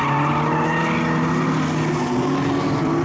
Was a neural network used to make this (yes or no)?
no